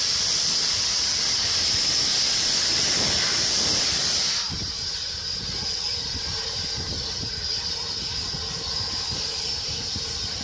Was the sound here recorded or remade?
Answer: remade